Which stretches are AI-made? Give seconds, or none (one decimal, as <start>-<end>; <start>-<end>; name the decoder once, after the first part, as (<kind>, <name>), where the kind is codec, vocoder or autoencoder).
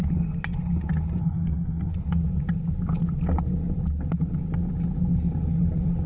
1.2-1.9 (codec, SNAC)